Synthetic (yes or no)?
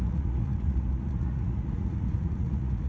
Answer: yes